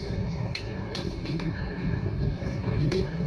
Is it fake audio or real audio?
fake